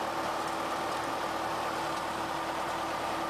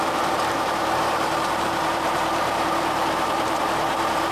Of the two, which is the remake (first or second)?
second